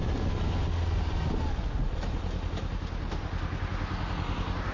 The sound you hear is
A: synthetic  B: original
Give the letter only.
B